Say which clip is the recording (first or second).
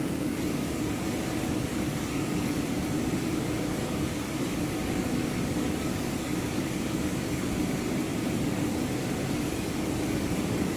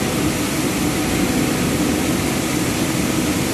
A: second